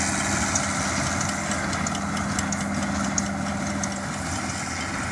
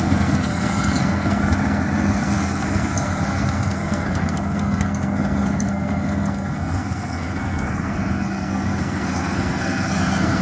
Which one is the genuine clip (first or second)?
first